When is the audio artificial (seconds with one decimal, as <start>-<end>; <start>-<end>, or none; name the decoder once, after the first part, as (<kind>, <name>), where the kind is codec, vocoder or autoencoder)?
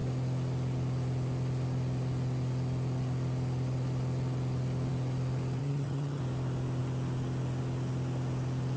5.6-6.2 (vocoder, HiFi-GAN)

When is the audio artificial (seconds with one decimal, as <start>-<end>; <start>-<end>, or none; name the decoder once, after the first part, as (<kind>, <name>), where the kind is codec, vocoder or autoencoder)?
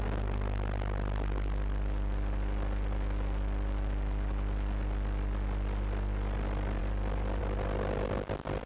none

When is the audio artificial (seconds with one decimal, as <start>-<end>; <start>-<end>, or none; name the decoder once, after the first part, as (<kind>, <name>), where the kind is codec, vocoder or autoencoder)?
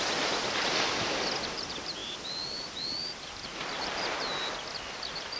2.0-4.5 (vocoder, BigVGAN v2)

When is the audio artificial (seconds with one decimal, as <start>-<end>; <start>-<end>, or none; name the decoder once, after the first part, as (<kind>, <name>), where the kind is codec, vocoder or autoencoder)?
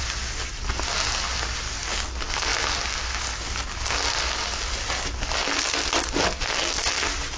none